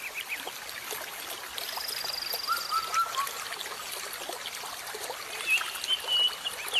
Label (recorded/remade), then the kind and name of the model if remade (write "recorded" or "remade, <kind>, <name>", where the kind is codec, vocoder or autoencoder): recorded